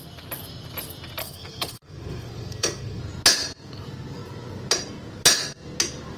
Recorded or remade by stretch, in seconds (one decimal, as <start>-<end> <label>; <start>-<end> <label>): 0.0-1.2 recorded; 1.2-3.0 remade; 3.0-6.2 recorded